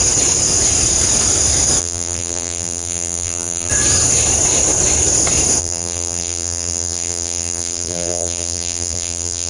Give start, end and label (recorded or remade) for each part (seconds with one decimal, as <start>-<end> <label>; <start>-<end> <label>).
0.0-1.8 recorded; 1.8-3.7 remade; 3.7-5.6 recorded; 5.6-9.5 remade